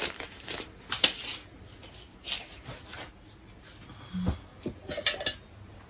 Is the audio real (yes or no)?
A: yes